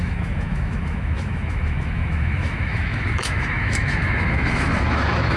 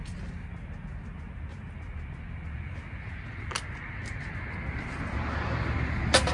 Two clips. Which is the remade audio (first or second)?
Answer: first